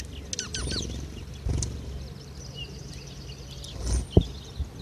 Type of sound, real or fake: real